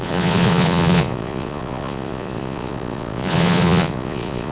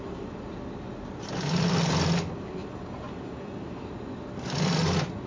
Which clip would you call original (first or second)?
second